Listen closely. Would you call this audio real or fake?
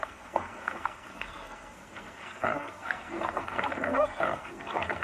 fake